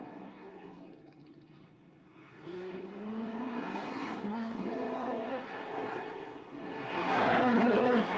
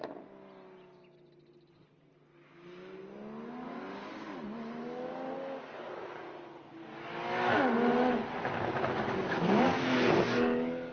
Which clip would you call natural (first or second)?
second